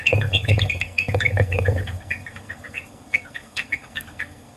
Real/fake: fake